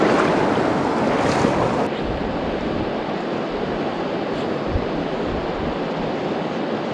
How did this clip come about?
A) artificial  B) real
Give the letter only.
B